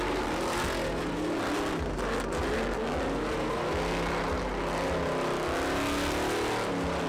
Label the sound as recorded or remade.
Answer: recorded